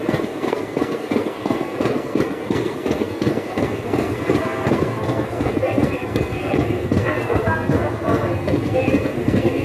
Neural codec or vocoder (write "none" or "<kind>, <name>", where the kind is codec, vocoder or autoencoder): codec, SNAC